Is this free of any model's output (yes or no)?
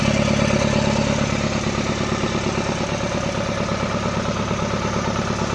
yes